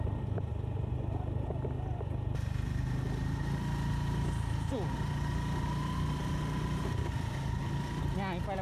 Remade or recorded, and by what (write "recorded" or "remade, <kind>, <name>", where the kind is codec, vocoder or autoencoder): recorded